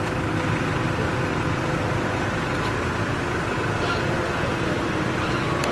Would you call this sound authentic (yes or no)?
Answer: yes